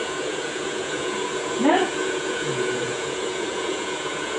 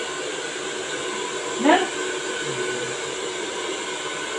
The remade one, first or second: first